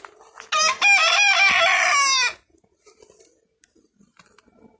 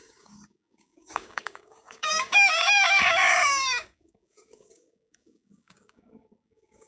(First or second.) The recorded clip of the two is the first